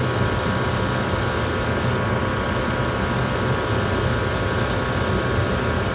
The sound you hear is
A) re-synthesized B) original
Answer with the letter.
B